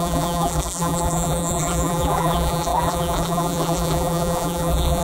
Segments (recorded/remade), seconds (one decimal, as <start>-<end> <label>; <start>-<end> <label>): 0.0-5.0 remade